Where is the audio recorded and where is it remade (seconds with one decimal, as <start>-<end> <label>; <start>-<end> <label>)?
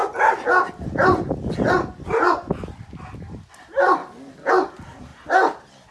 0.0-3.5 recorded; 3.5-4.0 remade; 4.0-4.5 recorded; 4.5-5.1 remade; 5.1-5.9 recorded